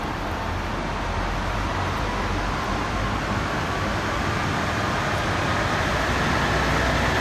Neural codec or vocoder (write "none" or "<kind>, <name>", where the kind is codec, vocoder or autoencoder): none